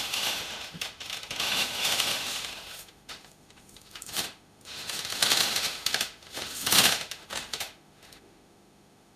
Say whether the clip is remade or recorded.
remade